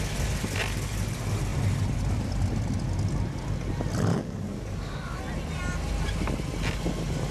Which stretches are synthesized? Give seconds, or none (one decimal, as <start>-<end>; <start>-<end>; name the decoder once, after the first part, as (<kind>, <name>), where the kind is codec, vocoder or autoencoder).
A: 4.1-5.2 (codec, DAC)